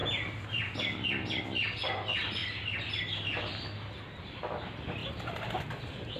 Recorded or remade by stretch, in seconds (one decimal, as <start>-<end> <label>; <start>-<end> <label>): 0.0-2.4 recorded; 2.4-3.5 remade; 3.5-5.0 recorded; 5.0-5.6 remade; 5.6-6.2 recorded